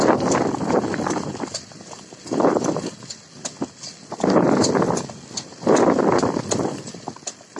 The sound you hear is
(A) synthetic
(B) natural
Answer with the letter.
B